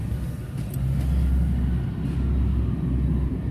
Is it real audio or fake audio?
real